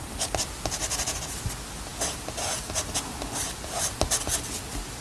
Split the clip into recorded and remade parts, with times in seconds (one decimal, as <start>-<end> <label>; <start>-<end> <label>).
0.0-5.0 recorded